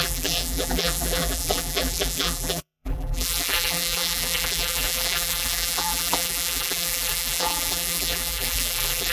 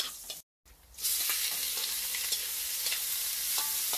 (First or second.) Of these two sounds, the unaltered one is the second